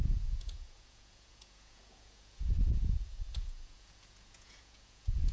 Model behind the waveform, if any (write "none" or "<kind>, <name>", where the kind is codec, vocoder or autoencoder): vocoder, Vocos